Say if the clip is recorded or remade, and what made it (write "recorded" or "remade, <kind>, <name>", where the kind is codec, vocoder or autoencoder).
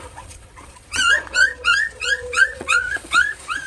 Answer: remade, vocoder, Vocos